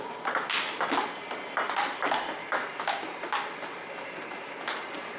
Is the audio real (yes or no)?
yes